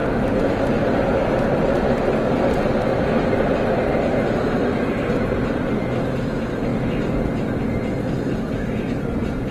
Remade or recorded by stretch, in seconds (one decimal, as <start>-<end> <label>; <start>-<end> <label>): 0.0-1.1 recorded; 1.1-2.0 remade; 2.0-9.5 recorded